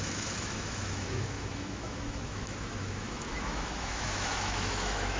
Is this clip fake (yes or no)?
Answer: yes